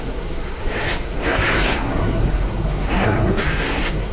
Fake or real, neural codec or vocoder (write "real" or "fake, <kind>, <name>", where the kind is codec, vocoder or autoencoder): fake, codec, SNAC